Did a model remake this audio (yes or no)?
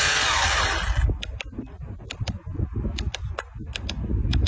no